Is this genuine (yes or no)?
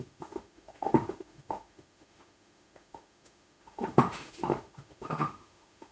no